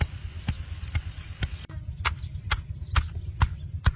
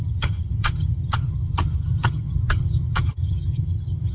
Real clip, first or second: first